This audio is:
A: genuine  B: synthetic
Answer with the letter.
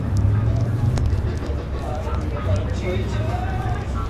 A